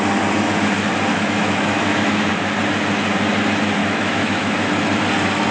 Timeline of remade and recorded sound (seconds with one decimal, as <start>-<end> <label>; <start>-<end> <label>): 0.0-1.1 recorded; 1.1-2.3 remade; 2.3-3.8 recorded; 3.8-4.5 remade; 4.5-5.5 recorded